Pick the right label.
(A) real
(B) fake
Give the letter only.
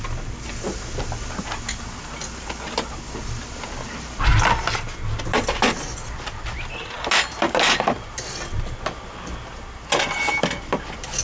A